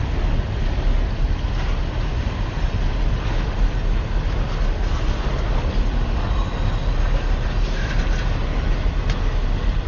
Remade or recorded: recorded